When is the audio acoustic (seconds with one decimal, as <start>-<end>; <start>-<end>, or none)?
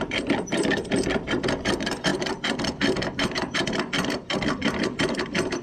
none